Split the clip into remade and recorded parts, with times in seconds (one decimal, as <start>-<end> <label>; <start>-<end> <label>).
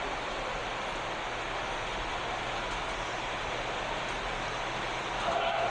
0.0-5.7 recorded